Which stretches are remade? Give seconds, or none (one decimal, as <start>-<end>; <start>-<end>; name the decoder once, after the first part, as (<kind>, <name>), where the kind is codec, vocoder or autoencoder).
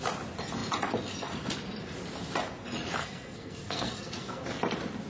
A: 3.0-4.4 (codec, SNAC)